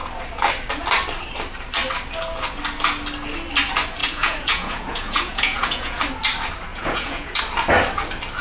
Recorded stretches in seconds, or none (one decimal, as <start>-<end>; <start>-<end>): 0.0-4.0; 6.0-6.7; 7.4-8.4